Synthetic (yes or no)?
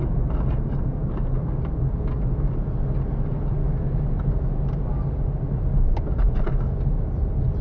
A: no